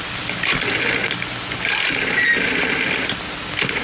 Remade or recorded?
recorded